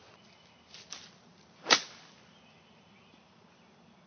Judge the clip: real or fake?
real